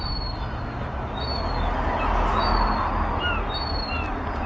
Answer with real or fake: real